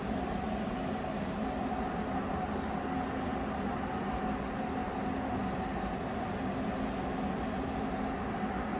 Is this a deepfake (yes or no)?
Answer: no